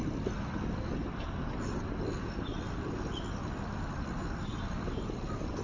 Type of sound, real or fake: real